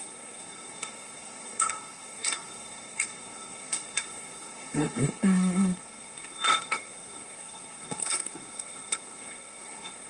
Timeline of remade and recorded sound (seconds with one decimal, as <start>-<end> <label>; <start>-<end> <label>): 0.0-10.1 remade